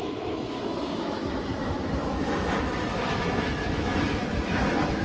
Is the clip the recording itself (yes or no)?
no